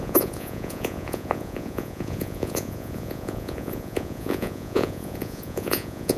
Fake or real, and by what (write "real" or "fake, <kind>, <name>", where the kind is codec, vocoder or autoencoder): fake, vocoder, Vocos